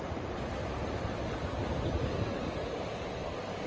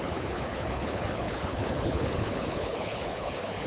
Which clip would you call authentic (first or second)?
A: first